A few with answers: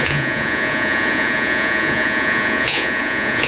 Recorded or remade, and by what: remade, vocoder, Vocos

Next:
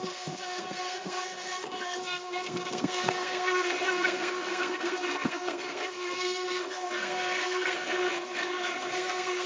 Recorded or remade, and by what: remade, codec, SNAC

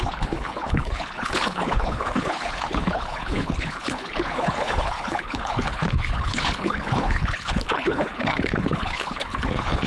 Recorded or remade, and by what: remade, codec, HILCodec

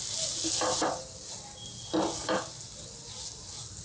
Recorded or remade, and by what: recorded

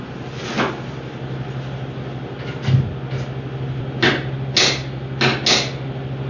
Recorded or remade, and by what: recorded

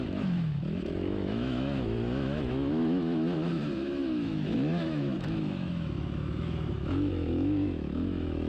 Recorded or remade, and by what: remade, autoencoder, DAC-VAE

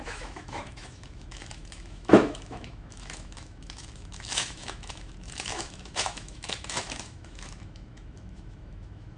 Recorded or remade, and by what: remade, autoencoder, DAC-VAE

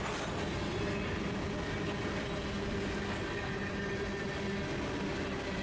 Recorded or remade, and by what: recorded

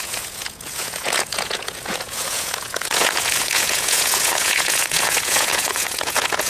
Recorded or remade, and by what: remade, vocoder, Vocos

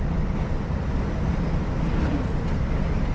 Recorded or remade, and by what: recorded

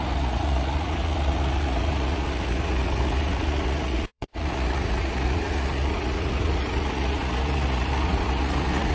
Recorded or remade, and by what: remade, vocoder, Vocos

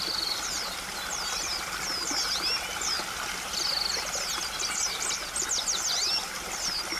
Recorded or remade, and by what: recorded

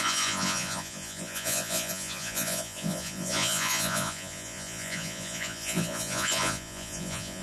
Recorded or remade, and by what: remade, vocoder, Vocos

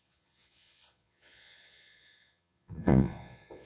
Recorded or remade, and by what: remade, vocoder, Vocos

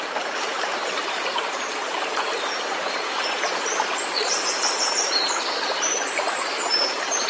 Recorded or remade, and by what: remade, vocoder, BigVGAN v2